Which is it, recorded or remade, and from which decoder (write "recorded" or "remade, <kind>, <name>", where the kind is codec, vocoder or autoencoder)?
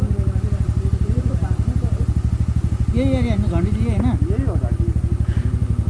recorded